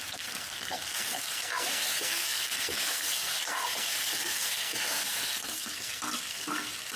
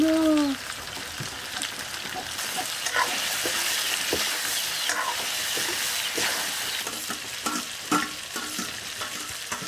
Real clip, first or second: second